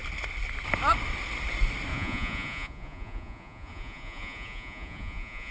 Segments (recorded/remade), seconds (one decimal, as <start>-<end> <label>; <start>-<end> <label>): 0.0-1.9 recorded; 1.9-5.5 remade